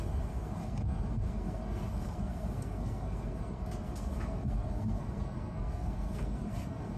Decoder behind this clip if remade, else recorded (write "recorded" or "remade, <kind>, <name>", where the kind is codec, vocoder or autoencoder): remade, codec, SNAC